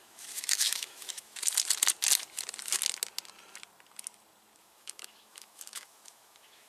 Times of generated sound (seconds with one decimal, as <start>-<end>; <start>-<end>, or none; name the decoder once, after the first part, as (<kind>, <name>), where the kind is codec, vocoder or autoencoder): 0.0-1.4 (autoencoder, DAC-VAE); 4.6-6.7